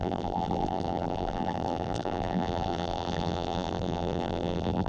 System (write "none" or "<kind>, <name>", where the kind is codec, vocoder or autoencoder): vocoder, BigVGAN v2